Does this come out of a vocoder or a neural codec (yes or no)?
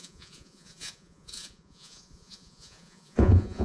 yes